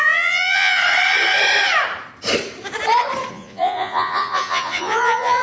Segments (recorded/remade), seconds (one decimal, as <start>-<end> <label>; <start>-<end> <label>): 0.0-0.8 remade; 0.8-3.3 recorded; 3.3-5.4 remade